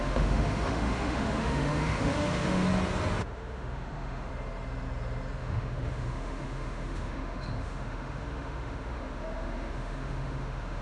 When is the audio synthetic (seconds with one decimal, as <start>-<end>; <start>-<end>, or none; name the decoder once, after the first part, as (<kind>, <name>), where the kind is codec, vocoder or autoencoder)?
0.0-2.6 (autoencoder, DAC-VAE); 3.2-4.3; 5.4-10.8